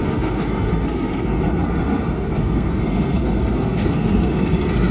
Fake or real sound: fake